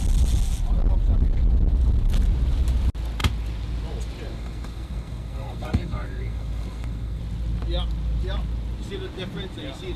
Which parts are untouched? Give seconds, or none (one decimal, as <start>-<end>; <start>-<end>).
0.0-4.3; 7.2-10.0